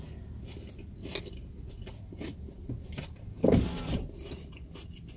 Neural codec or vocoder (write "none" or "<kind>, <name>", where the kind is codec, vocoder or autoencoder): none